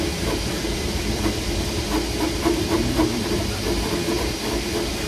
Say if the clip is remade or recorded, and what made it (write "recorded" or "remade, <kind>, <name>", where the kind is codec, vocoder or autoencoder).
remade, vocoder, BigVGAN v2